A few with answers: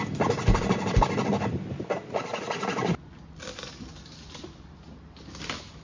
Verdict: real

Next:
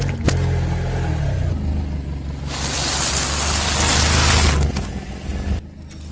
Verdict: real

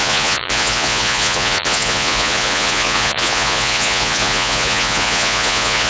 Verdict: fake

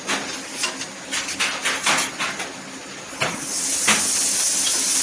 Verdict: real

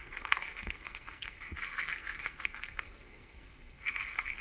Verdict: fake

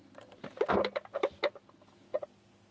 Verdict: real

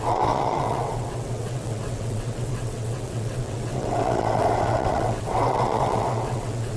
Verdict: fake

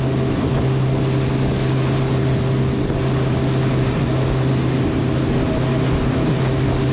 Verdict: real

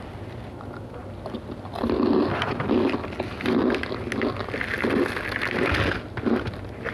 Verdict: real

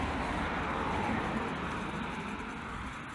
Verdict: real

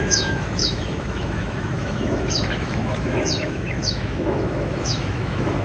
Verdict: fake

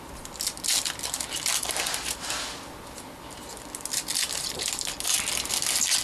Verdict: real